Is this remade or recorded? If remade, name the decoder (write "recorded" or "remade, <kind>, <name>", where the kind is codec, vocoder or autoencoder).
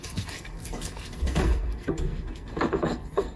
remade, codec, SNAC